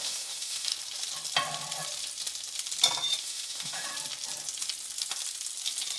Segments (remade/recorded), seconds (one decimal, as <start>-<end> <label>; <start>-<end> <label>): 0.0-0.7 remade; 0.7-3.2 recorded; 3.2-3.9 remade; 3.9-6.0 recorded